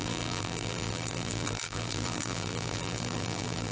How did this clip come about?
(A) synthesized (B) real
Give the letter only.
A